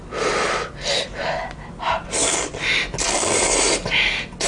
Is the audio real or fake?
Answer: real